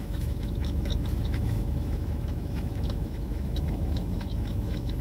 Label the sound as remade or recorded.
remade